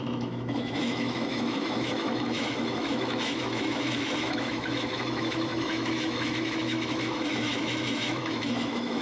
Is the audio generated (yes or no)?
yes